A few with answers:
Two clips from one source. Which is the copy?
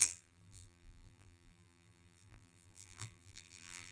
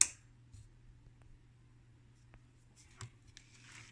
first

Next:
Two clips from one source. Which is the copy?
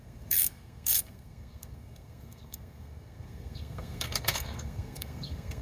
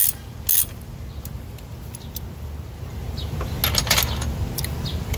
first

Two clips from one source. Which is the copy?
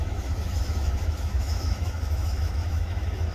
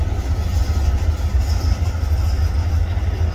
first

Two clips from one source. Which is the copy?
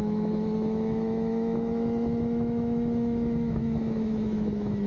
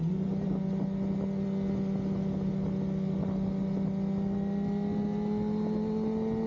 first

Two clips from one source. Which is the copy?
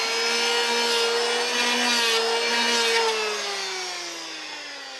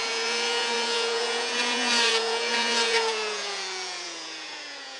second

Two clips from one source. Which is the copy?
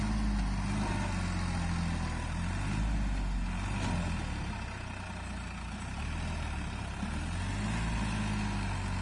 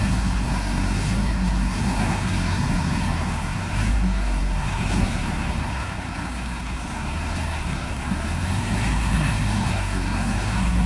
second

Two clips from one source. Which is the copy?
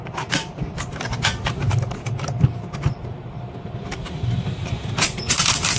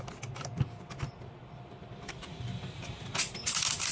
first